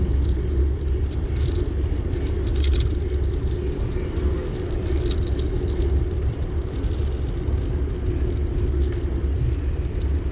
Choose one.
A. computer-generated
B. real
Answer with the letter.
B